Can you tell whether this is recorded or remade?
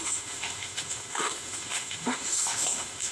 remade